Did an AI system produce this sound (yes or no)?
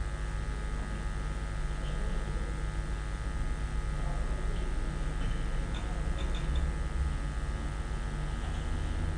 no